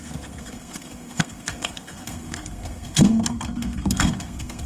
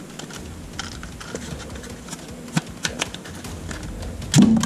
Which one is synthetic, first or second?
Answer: first